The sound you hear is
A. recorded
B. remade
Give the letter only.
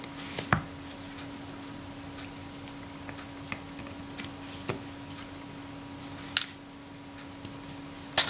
A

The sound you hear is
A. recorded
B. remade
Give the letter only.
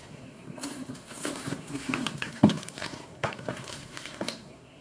B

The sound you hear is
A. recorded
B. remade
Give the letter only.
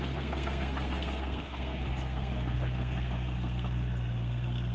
B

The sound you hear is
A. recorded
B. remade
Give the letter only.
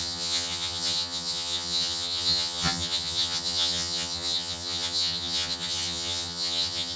B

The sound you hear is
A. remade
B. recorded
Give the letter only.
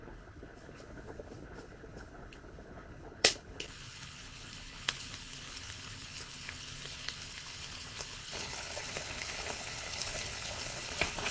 A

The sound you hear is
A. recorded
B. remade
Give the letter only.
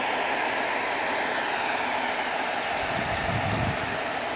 A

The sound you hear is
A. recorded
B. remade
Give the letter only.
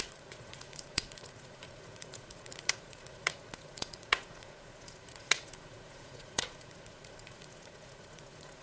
B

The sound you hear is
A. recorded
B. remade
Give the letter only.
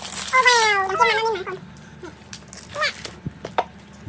A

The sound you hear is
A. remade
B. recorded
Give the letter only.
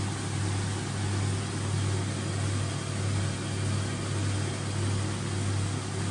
B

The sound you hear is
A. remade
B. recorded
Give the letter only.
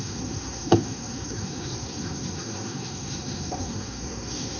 A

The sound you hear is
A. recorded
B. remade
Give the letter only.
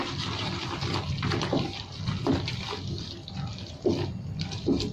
A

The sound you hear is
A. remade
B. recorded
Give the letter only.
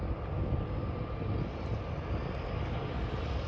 B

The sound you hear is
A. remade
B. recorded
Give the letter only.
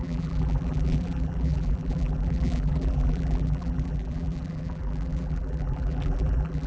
A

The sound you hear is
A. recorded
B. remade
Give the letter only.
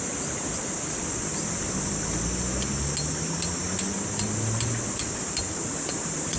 A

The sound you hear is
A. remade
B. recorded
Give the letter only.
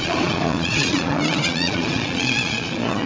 A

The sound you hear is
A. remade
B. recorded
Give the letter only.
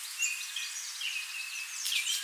B